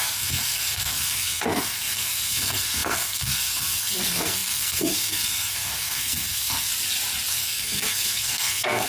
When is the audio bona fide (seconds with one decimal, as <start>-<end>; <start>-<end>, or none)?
6.7-7.3